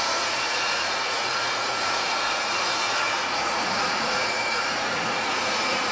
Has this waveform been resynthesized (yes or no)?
yes